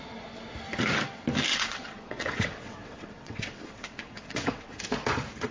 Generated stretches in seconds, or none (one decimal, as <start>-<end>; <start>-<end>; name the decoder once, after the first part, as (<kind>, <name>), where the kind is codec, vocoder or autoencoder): 1.5-4.8 (vocoder, WaveNeXt)